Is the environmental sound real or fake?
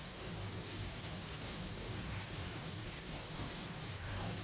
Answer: fake